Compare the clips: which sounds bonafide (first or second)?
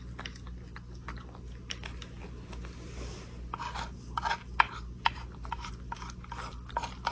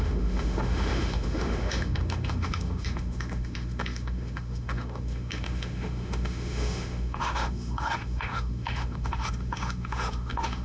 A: first